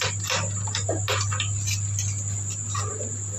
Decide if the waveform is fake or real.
real